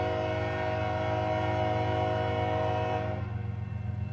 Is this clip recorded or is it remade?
recorded